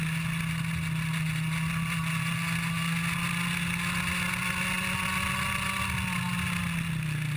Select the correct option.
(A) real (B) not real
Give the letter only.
A